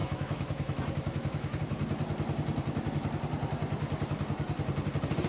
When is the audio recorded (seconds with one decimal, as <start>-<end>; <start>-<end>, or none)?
1.6-5.3